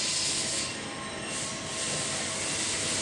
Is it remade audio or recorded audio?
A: recorded